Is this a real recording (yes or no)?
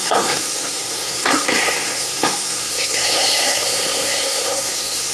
no